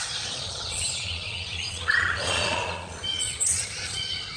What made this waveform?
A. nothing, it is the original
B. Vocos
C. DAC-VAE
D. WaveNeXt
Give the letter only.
B